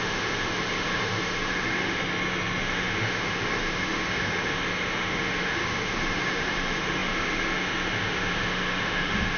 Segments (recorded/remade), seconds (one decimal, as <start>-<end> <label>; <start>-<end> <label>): 0.0-2.0 remade; 2.0-2.6 recorded; 2.6-9.4 remade